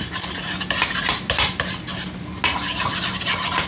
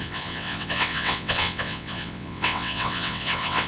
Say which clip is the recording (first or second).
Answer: first